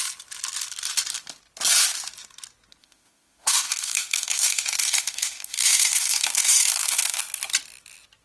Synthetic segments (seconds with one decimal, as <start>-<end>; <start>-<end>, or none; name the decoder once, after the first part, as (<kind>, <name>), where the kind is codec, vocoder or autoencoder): 2.8-7.2 (autoencoder, DAC-VAE)